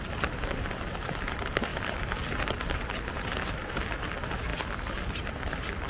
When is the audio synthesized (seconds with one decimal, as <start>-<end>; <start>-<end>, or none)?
none